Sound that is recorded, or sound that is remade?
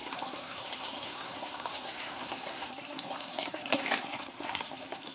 remade